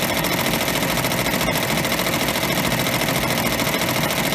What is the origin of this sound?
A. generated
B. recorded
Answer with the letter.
B